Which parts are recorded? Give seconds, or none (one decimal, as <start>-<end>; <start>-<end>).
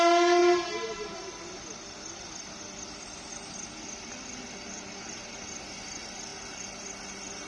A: 0.0-7.5